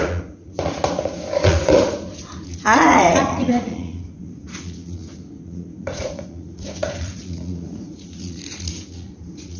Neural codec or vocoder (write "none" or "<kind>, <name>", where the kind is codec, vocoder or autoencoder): vocoder, Vocos